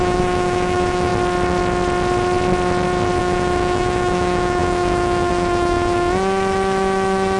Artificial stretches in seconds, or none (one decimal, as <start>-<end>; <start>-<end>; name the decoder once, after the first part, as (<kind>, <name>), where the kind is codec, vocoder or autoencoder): 0.0-1.1 (autoencoder, DAC-VAE); 3.2-7.4